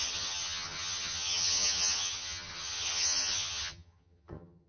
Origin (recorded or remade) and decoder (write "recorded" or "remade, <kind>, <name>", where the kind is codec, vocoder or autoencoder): remade, vocoder, HiFi-GAN